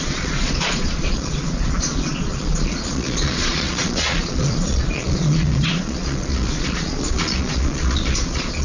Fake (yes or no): yes